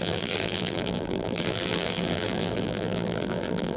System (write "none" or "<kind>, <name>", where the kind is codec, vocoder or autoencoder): vocoder, BigVGAN v2